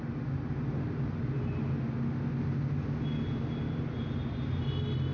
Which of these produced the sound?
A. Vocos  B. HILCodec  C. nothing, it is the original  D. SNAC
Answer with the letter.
C